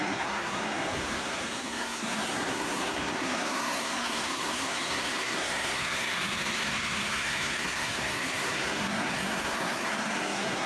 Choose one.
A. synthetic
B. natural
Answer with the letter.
A